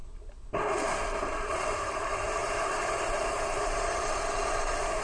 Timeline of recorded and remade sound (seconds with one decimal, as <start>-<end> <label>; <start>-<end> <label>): 0.0-1.4 recorded; 1.4-5.0 remade